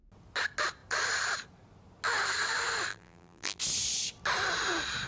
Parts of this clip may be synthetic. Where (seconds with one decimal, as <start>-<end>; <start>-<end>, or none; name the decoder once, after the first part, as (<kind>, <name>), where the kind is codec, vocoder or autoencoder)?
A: 2.9-3.6 (vocoder, BigVGAN v2)